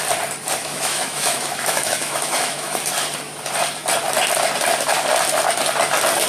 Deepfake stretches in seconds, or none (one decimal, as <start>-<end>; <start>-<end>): 0.6-2.8